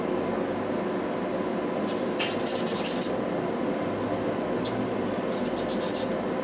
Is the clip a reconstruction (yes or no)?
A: no